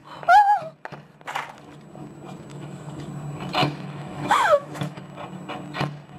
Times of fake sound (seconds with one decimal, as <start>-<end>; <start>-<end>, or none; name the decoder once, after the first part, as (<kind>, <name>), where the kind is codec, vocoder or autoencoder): 2.5-3.1 (autoencoder, DAC-VAE); 3.6-5.0